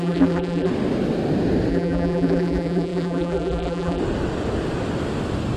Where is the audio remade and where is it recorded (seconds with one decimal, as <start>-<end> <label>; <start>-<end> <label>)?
0.0-0.7 remade; 0.7-1.7 recorded; 1.7-4.0 remade; 4.0-5.6 recorded